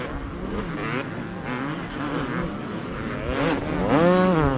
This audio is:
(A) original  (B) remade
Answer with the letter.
A